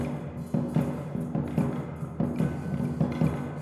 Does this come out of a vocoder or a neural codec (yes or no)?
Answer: no